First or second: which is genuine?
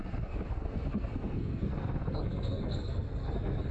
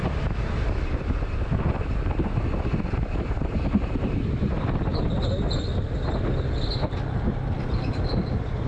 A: second